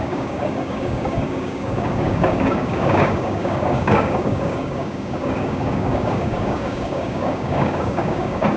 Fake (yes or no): yes